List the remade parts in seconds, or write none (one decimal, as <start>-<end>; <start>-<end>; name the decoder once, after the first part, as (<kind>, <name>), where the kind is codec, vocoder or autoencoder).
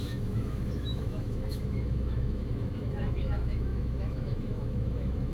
0.0-5.3 (autoencoder, DAC-VAE)